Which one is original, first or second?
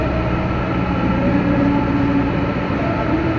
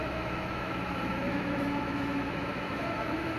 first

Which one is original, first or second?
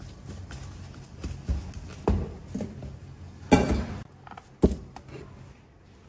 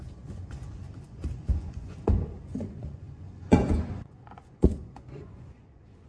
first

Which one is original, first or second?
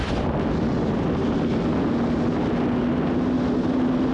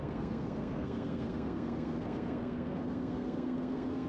first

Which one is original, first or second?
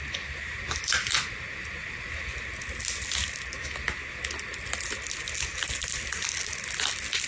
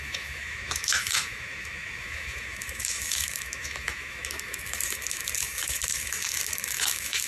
first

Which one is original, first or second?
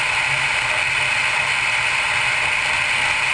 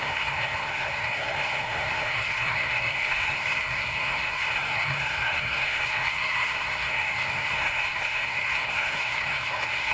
first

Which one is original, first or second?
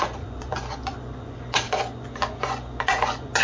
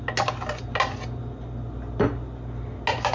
second